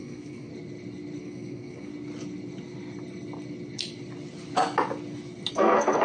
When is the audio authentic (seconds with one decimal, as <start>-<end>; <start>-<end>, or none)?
0.5-1.2; 1.9-5.5